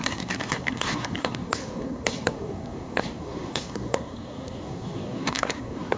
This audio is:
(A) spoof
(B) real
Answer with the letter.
A